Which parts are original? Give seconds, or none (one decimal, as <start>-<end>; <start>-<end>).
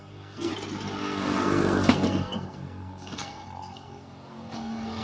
0.5-1.0